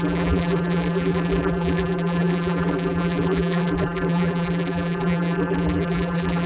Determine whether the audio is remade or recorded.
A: remade